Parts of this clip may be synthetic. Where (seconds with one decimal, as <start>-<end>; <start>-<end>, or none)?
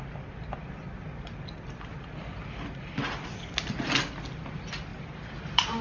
4.9-5.8